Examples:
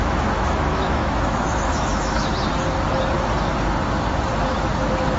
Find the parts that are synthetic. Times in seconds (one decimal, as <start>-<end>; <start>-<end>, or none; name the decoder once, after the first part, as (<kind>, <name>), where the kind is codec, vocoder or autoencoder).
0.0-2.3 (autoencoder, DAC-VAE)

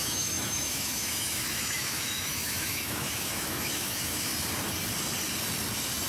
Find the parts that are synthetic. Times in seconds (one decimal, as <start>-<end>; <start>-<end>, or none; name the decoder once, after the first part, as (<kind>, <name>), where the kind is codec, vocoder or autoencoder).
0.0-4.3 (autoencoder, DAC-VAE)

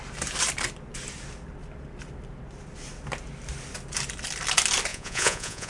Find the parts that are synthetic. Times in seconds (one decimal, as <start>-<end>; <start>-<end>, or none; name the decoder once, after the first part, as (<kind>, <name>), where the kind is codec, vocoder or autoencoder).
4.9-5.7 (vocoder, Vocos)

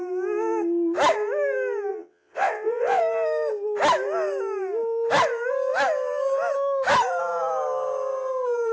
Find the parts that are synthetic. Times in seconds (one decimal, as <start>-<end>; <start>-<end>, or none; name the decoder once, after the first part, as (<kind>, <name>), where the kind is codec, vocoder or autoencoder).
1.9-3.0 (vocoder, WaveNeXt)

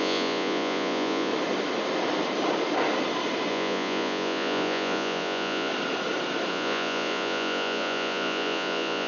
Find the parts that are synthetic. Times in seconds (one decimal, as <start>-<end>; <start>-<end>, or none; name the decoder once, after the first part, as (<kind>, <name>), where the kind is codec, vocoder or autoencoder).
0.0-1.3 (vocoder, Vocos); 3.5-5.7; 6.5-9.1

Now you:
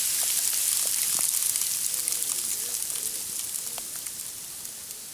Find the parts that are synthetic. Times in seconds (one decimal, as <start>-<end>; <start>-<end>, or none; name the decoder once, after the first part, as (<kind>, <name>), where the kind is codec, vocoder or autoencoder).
none

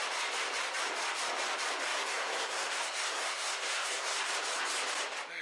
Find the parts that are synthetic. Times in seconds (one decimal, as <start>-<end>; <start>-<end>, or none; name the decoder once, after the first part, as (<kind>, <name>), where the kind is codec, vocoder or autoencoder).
1.9-4.3 (codec, SNAC)

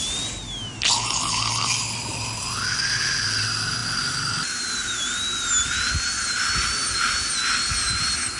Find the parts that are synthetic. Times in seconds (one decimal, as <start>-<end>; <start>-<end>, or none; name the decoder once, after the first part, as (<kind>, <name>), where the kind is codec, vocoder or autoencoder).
none